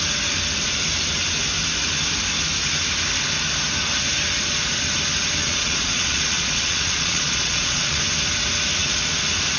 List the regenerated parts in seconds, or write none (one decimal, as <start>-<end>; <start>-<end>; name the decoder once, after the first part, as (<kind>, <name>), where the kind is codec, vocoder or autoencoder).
5.4-8.0 (vocoder, Vocos)